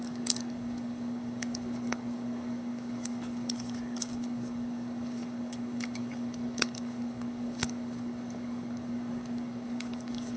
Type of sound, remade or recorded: remade